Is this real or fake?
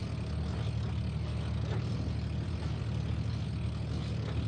real